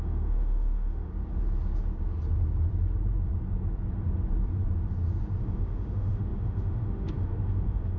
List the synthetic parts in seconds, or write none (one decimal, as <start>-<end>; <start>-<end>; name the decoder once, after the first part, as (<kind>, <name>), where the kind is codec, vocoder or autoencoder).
0.0-1.1 (autoencoder, DAC-VAE); 5.4-8.0